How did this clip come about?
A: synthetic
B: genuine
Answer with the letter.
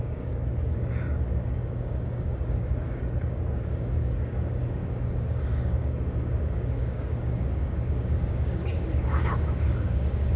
A